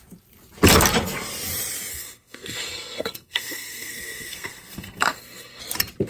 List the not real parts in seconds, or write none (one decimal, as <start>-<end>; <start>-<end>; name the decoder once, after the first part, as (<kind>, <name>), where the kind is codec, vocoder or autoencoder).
1.9-5.6 (codec, SNAC)